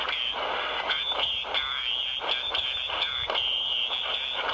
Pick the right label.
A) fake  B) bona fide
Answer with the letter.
A